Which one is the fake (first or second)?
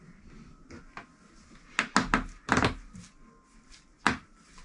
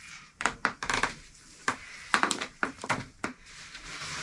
second